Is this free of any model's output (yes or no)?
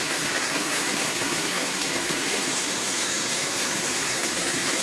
no